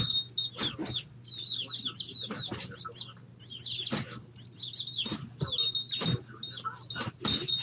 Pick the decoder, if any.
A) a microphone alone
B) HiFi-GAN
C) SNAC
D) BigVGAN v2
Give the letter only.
A